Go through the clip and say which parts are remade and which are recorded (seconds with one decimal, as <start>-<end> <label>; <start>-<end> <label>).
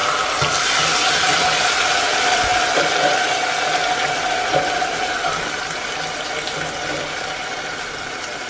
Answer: 0.0-8.5 recorded